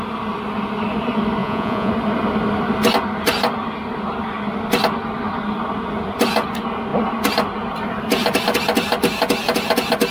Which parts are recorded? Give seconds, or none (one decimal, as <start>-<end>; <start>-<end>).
0.0-1.4; 1.9-10.1